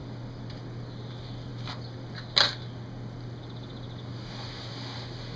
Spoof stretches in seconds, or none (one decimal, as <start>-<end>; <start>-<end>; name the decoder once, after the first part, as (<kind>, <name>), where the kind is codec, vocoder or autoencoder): none